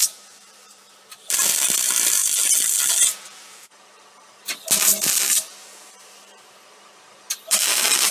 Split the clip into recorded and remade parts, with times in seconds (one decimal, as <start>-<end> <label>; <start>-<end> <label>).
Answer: 0.0-2.2 remade; 2.2-3.0 recorded; 3.0-8.1 remade